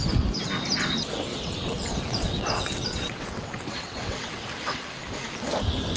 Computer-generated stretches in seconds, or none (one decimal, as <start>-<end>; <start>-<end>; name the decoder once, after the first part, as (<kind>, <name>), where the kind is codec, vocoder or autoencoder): 1.3-4.9 (vocoder, WaveNeXt)